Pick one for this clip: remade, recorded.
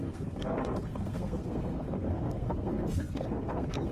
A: remade